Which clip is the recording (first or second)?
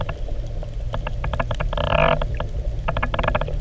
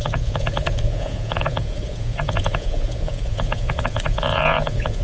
first